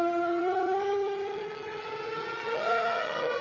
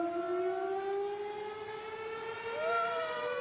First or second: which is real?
second